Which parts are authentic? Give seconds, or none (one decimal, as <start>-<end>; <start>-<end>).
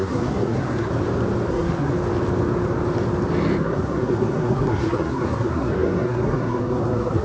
0.9-1.5; 1.9-3.6